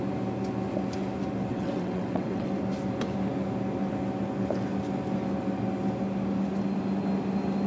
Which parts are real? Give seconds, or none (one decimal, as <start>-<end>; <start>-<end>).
0.0-1.5; 2.5-7.7